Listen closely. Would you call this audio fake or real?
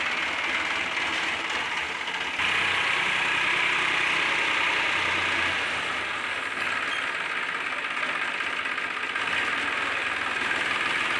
real